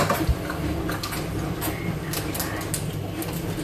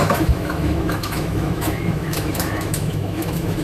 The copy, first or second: second